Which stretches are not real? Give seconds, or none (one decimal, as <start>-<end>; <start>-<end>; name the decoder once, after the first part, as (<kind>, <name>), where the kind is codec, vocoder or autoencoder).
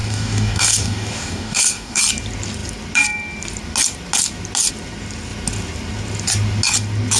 0.0-2.0 (codec, DAC)